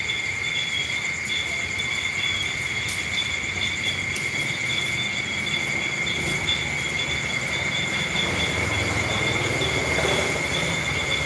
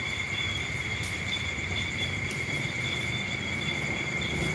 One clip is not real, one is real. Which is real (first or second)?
first